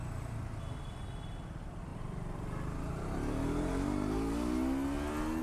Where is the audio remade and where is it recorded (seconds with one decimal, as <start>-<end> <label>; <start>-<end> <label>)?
0.0-5.4 recorded